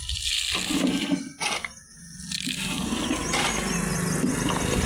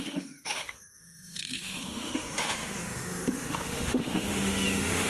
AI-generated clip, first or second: second